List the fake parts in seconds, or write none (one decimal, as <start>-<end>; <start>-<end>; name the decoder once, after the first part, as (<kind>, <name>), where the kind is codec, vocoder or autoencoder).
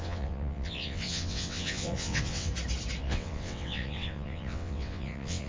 0.0-2.5 (vocoder, WaveNeXt); 3.0-5.5